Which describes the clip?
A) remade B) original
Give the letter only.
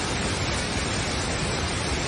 B